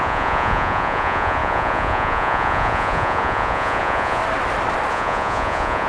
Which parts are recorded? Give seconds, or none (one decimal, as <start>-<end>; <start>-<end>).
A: 4.2-4.9